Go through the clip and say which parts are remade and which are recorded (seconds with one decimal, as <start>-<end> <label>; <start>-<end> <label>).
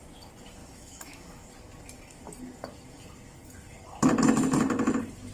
0.0-0.6 recorded; 0.6-1.5 remade; 1.5-5.3 recorded